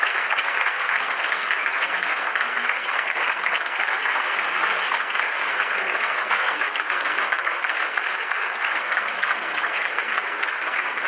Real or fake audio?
fake